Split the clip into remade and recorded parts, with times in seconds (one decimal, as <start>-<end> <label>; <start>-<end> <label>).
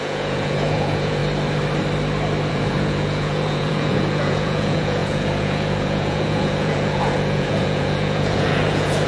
0.0-1.2 remade; 1.2-2.5 recorded; 2.5-9.1 remade